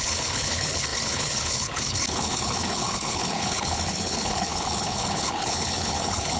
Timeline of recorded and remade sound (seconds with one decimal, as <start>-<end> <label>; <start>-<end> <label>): 0.0-6.4 remade